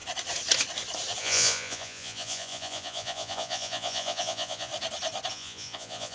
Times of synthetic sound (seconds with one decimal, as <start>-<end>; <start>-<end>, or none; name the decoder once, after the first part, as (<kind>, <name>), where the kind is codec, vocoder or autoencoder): 1.2-4.7 (vocoder, Vocos); 5.3-6.1